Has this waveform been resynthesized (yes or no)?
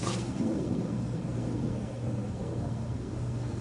yes